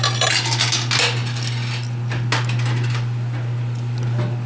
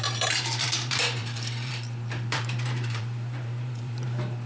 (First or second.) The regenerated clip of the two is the second